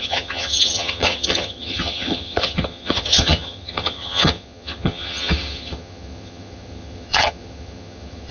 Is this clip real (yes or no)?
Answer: no